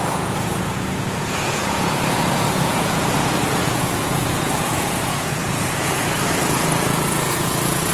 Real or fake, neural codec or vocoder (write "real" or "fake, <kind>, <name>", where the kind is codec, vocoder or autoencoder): fake, vocoder, Vocos